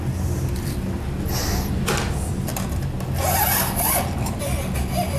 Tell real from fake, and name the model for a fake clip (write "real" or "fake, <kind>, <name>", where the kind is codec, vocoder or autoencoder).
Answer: real